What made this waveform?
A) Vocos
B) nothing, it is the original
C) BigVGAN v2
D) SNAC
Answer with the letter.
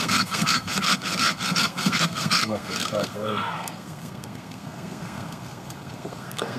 D